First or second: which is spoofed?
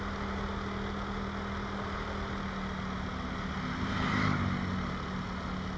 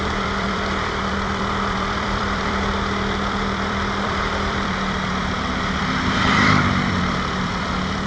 second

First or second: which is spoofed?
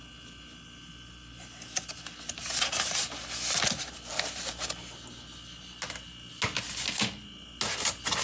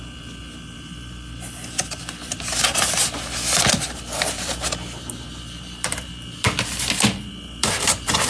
second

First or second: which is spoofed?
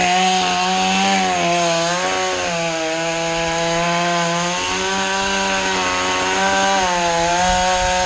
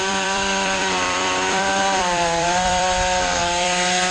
second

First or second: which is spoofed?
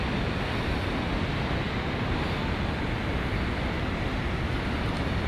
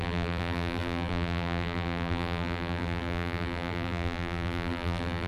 second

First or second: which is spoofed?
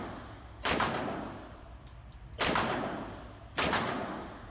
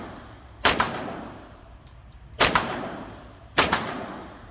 second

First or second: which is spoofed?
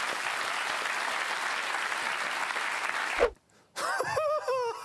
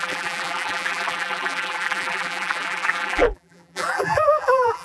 second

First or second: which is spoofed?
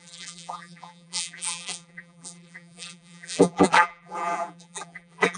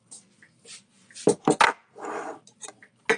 first